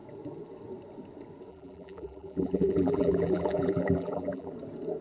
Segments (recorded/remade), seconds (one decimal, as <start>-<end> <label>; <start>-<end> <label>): 0.0-1.5 recorded; 1.5-4.5 remade; 4.5-5.0 recorded